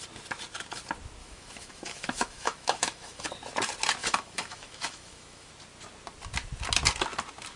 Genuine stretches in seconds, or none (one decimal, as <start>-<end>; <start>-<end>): 0.0-1.2; 3.3-4.0; 5.5-7.6